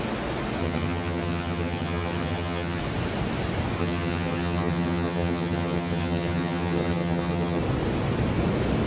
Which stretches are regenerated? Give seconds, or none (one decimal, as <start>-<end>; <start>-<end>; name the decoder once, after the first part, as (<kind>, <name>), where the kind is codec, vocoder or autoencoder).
0.6-2.8 (vocoder, HiFi-GAN); 3.8-7.6